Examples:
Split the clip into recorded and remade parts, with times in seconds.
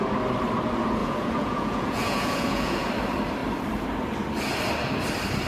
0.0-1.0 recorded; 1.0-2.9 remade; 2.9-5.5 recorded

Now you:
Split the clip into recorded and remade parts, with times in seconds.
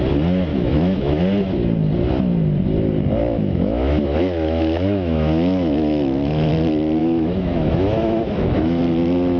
0.0-0.5 recorded; 0.5-1.2 remade; 1.2-3.2 recorded; 3.2-6.5 remade; 6.5-7.0 recorded; 7.0-8.8 remade; 8.8-9.4 recorded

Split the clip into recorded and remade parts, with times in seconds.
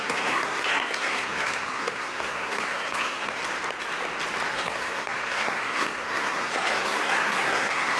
0.0-3.4 remade; 3.4-4.5 recorded; 4.5-8.0 remade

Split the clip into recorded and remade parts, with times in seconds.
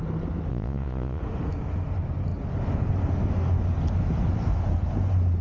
0.0-0.5 recorded; 0.5-1.2 remade; 1.2-5.4 recorded